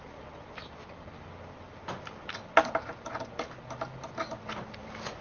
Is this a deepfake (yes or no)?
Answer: no